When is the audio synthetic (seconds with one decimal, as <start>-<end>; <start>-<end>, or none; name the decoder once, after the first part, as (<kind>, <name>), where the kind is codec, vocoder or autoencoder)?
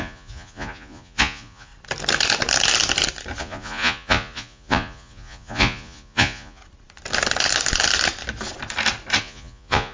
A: 0.0-1.7 (vocoder, Vocos); 3.4-6.6; 9.2-9.9